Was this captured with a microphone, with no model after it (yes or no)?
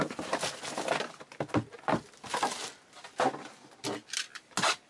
yes